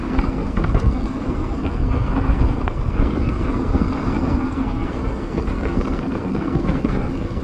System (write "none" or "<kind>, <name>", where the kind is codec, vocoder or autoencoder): codec, SNAC